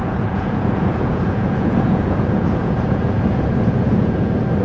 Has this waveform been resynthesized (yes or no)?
yes